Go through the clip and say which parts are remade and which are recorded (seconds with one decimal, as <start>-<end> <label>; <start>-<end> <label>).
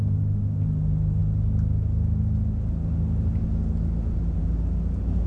0.0-5.3 recorded